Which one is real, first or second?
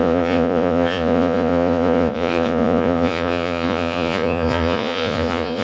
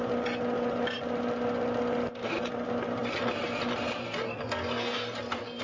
second